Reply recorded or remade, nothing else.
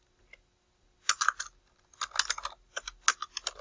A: recorded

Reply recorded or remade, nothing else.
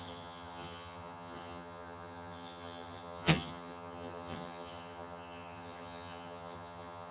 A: remade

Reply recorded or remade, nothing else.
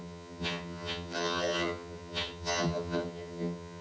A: remade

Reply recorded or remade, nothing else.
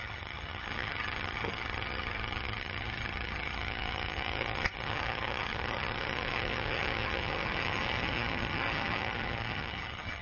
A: remade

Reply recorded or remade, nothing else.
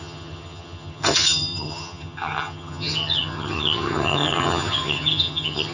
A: remade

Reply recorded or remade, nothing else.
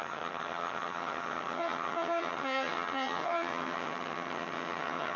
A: remade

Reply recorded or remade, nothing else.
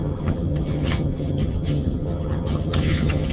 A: remade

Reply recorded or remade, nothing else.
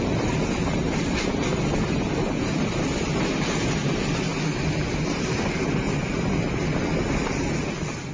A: recorded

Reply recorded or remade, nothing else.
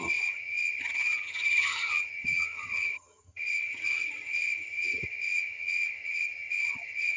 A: remade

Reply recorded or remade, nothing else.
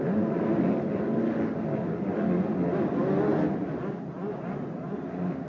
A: recorded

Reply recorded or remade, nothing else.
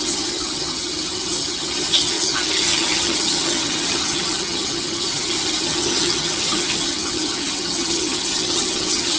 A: remade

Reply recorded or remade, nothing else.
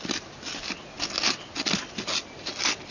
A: recorded